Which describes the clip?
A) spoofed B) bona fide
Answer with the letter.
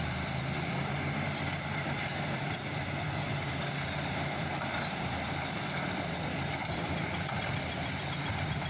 A